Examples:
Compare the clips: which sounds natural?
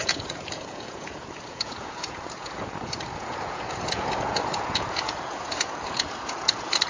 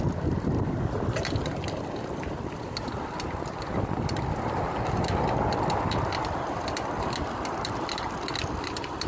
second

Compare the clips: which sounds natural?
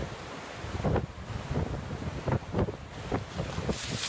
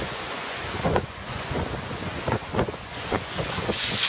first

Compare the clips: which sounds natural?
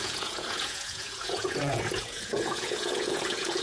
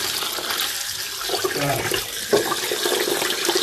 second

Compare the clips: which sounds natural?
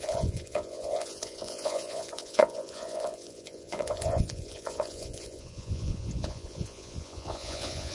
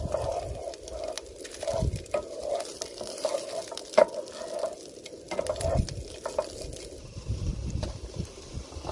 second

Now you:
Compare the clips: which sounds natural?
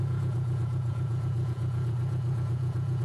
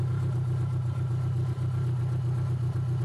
second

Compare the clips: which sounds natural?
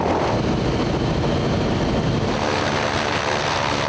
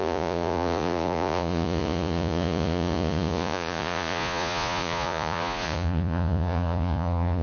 first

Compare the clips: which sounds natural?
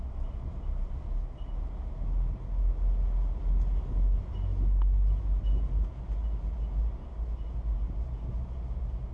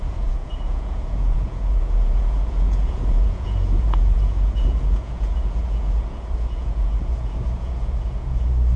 first